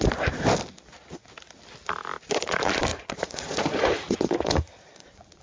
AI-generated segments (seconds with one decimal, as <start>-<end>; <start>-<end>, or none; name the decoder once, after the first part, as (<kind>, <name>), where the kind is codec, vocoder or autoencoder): 2.9-5.4 (vocoder, Vocos)